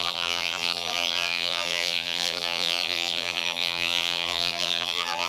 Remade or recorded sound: remade